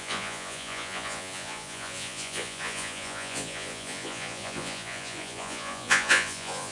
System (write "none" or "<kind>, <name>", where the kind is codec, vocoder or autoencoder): vocoder, Vocos